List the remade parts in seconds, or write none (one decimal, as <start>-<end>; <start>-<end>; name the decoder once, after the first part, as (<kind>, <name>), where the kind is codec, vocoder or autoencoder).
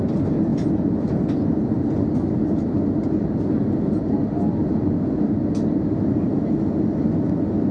none